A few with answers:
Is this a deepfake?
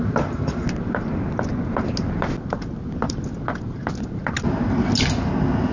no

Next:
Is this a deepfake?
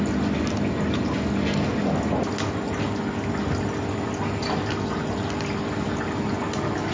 no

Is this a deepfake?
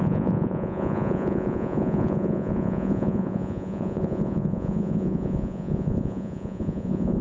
yes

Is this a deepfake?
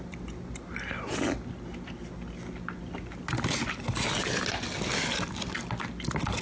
no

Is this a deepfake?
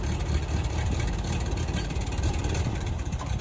yes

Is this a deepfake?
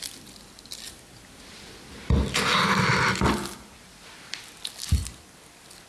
no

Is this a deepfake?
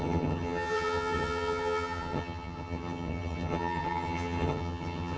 yes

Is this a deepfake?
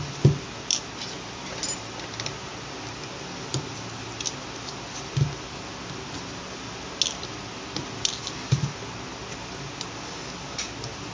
no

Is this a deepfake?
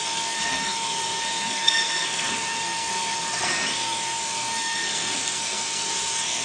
yes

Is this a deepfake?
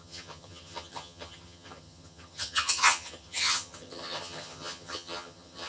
yes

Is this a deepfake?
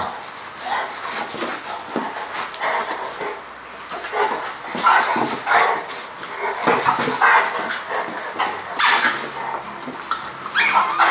no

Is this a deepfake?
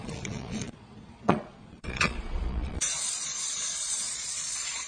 yes